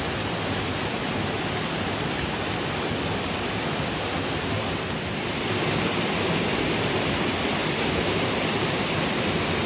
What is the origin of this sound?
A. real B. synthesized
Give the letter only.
A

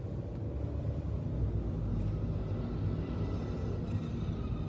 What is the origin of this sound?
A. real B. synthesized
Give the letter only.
A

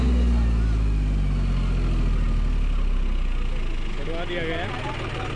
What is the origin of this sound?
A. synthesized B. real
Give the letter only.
B